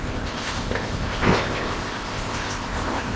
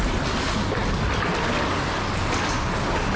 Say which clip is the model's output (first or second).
first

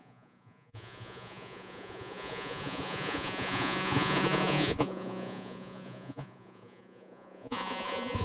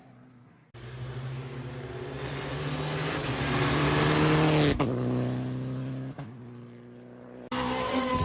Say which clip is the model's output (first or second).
first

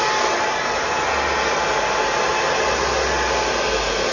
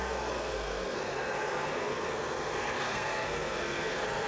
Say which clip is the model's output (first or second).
second